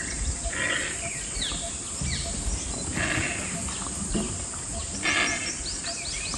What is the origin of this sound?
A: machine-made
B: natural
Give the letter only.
B